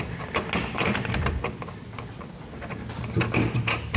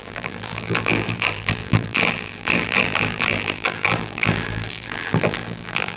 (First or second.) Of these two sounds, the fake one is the second